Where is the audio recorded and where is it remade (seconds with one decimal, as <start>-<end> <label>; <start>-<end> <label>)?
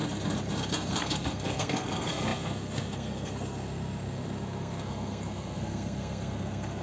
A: 0.0-0.9 recorded; 0.9-6.8 remade